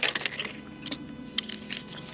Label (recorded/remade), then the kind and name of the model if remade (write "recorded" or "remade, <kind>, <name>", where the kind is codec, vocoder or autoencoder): recorded